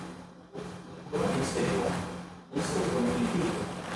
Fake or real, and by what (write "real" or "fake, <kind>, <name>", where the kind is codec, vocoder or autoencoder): real